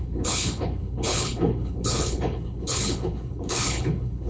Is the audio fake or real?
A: fake